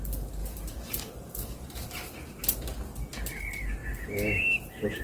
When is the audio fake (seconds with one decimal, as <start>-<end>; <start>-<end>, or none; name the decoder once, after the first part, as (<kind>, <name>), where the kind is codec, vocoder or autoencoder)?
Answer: 0.4-2.4 (vocoder, BigVGAN v2)